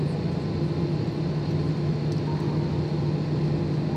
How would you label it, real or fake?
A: real